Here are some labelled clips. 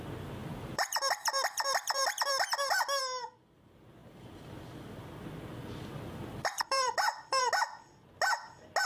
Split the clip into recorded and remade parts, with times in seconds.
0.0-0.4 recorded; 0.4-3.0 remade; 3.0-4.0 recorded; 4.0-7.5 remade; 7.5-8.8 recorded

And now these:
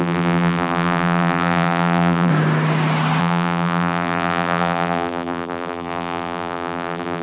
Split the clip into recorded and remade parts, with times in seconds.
0.0-2.3 remade; 2.3-3.2 recorded; 3.2-7.2 remade

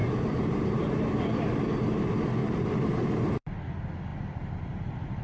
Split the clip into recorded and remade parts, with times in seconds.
0.0-0.8 remade; 0.8-2.4 recorded; 2.4-3.5 remade; 3.5-5.2 recorded

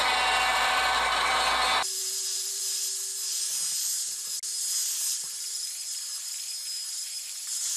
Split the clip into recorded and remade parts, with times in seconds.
0.0-0.5 recorded; 0.5-1.3 remade; 1.3-2.0 recorded; 2.0-2.6 remade; 2.6-7.8 recorded

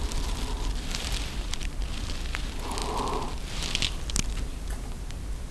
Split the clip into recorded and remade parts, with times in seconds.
0.0-2.8 remade; 2.8-4.1 recorded; 4.1-5.5 remade